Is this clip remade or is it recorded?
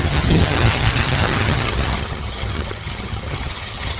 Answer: remade